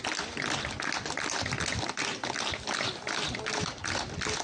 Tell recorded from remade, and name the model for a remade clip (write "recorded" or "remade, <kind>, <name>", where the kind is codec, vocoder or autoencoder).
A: recorded